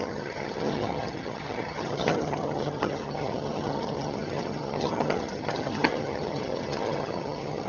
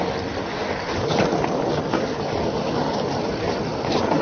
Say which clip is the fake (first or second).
first